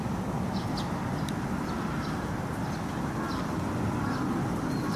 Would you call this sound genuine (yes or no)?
yes